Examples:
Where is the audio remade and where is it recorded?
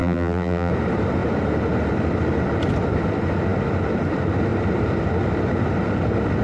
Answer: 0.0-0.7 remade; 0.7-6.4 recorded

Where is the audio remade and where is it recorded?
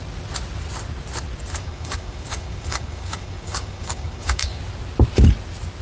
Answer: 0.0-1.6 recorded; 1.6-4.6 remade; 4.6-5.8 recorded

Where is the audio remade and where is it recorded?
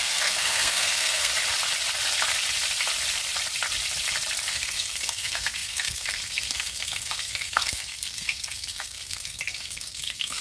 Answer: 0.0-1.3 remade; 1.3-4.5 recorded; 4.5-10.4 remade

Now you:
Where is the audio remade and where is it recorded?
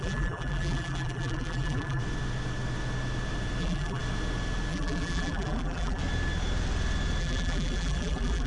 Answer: 0.0-2.0 remade; 2.0-3.6 recorded; 3.6-4.0 remade; 4.0-4.7 recorded; 4.7-6.0 remade; 6.0-7.2 recorded; 7.2-8.5 remade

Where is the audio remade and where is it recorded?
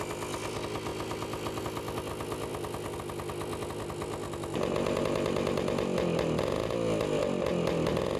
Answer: 0.0-8.2 recorded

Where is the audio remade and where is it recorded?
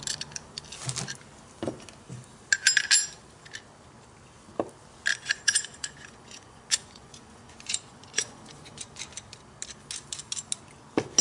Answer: 0.0-5.1 recorded; 5.1-9.0 remade; 9.0-11.2 recorded